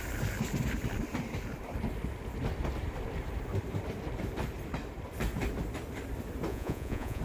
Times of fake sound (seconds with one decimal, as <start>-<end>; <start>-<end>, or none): 6.5-7.2